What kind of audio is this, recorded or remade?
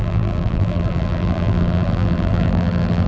remade